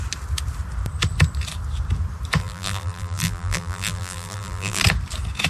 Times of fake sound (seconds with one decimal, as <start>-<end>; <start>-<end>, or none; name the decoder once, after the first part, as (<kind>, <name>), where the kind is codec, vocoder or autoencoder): 2.4-4.8 (vocoder, BigVGAN v2)